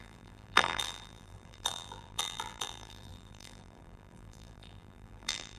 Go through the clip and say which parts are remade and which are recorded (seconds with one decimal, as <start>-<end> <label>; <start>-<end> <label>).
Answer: 0.0-5.6 remade